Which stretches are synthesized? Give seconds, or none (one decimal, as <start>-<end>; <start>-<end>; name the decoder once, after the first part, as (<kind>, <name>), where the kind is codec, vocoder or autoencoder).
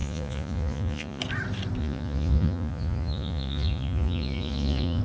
0.0-1.2 (vocoder, Vocos); 1.8-5.0